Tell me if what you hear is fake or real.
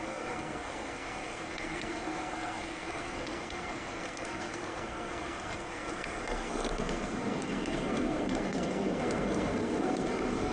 fake